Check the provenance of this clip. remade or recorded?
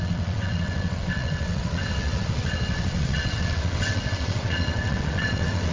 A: remade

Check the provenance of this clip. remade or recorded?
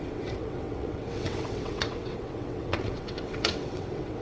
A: remade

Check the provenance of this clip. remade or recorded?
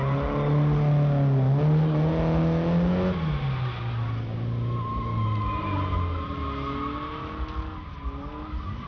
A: recorded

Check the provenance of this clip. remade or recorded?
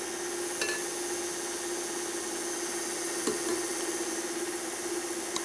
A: recorded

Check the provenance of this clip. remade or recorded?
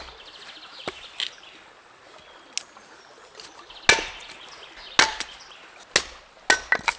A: recorded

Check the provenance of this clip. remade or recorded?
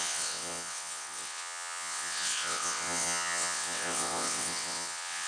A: remade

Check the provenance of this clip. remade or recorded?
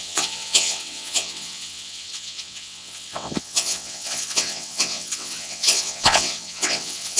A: remade